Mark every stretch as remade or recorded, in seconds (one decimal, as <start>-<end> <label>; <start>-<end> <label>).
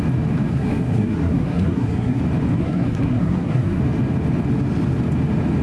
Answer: 0.0-0.5 recorded; 0.5-2.2 remade; 2.2-2.6 recorded; 2.6-3.8 remade; 3.8-5.6 recorded